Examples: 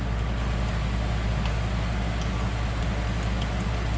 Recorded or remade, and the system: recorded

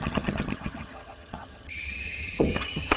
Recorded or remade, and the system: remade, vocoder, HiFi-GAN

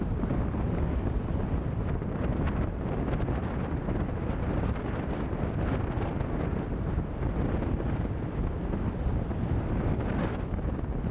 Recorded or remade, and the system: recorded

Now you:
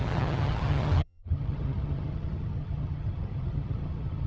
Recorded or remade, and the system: remade, vocoder, HiFi-GAN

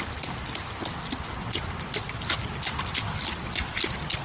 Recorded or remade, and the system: recorded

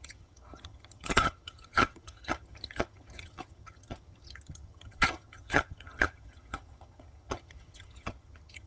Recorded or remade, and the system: remade, vocoder, HiFi-GAN